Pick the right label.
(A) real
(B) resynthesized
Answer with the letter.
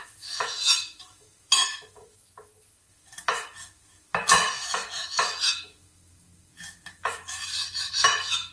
B